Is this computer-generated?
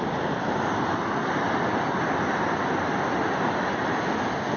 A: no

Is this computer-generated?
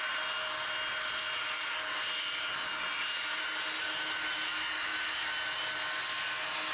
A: no